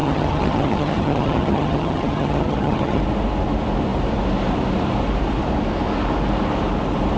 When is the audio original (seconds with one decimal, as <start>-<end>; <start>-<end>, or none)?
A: 3.0-7.2